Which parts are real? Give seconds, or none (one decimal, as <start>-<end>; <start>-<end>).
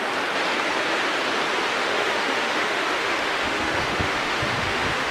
0.0-1.7